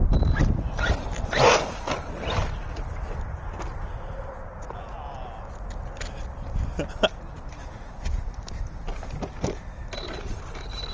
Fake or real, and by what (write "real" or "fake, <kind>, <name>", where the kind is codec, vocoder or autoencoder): real